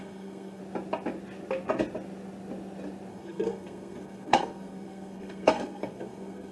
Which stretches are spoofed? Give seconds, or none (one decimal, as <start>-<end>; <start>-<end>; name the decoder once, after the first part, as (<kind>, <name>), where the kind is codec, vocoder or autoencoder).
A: 0.0-0.6 (codec, SNAC); 3.1-6.5